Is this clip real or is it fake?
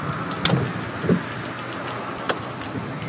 real